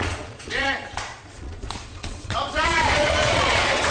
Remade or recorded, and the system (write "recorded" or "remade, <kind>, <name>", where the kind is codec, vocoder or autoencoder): remade, vocoder, Vocos